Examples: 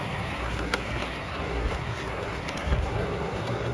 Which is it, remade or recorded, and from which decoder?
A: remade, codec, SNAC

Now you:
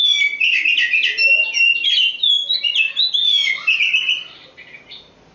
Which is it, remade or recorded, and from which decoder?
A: recorded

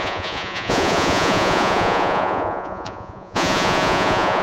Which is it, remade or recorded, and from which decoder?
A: remade, vocoder, Vocos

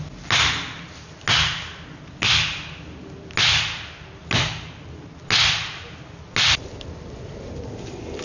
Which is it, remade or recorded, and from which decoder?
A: recorded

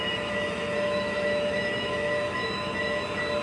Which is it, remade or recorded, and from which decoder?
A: remade, autoencoder, DAC-VAE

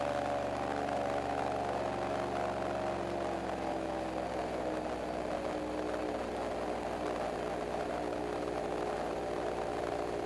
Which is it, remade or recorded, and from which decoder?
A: recorded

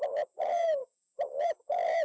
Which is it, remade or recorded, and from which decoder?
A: remade, vocoder, Vocos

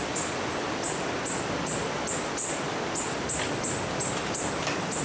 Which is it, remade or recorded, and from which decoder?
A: recorded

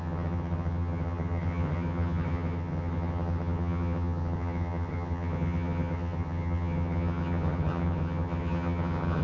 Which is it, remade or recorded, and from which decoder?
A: remade, vocoder, HiFi-GAN